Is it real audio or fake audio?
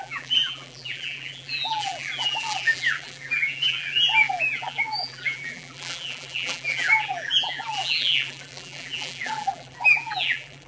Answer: fake